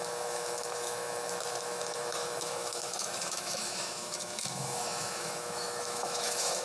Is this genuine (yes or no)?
no